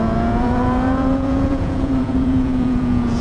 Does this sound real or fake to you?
fake